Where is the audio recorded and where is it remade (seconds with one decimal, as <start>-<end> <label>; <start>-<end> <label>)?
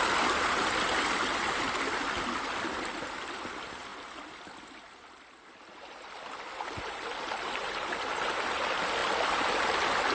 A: 0.0-9.0 remade; 9.0-10.1 recorded